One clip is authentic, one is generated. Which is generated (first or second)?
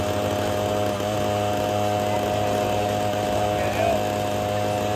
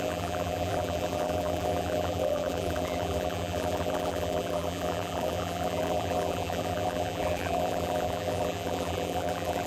second